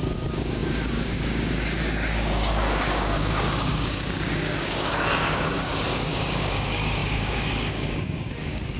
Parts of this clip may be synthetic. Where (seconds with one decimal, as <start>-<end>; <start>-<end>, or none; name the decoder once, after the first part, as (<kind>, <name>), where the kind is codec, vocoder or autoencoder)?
0.0-8.8 (codec, DAC)